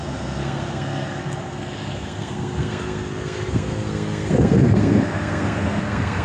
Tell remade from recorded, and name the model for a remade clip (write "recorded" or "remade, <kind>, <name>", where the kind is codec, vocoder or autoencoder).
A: remade, codec, SNAC